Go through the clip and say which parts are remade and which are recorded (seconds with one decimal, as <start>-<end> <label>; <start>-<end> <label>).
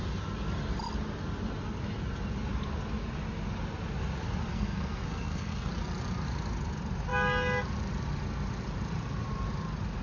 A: 0.0-4.5 recorded; 4.5-5.7 remade; 5.7-10.0 recorded